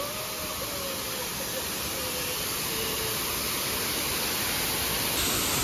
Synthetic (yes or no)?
no